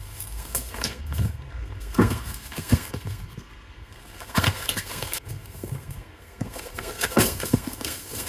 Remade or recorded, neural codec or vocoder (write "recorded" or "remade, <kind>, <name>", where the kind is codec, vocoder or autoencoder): remade, codec, SNAC